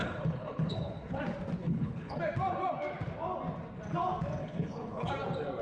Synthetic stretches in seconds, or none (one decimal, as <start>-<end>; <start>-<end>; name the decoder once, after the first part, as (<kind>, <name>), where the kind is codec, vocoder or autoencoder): 0.0-1.2 (codec, HILCodec); 1.6-2.2; 4.4-5.1

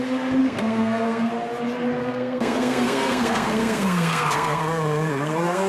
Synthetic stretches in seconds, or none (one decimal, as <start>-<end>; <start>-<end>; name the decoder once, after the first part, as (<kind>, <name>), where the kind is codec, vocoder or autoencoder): 0.4-1.3 (codec, SNAC); 2.0-5.7

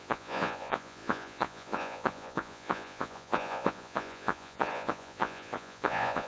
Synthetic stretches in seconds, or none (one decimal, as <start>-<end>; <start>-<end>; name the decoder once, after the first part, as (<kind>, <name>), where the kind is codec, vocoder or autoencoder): 0.0-6.3 (vocoder, Vocos)

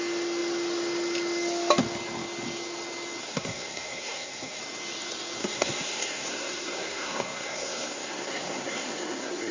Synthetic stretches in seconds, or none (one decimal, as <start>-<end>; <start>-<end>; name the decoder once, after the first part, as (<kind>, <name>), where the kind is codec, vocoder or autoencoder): 3.2-4.6 (codec, SNAC); 5.4-9.5